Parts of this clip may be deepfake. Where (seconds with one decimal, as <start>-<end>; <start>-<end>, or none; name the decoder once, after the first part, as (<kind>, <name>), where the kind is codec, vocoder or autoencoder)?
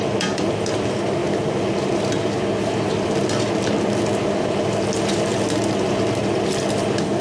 none